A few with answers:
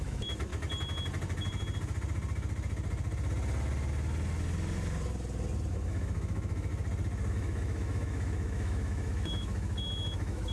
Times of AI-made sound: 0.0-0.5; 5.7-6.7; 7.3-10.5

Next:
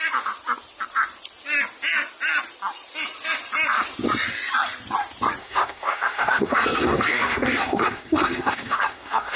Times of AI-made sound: 5.4-9.4